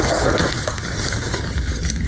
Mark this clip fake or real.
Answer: fake